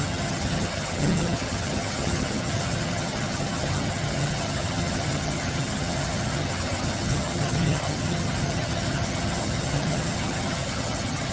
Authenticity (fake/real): fake